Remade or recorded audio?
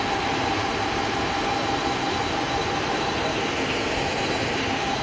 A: recorded